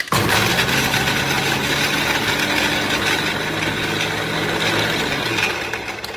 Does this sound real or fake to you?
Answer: real